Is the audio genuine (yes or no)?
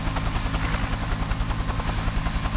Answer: yes